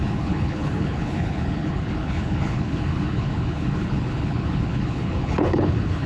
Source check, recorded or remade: remade